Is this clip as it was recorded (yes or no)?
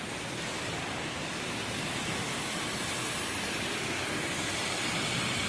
yes